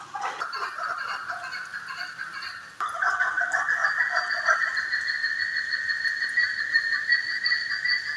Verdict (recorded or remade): recorded